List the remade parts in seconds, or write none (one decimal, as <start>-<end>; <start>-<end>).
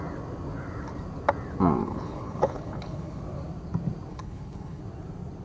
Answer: 1.8-3.2; 4.1-4.8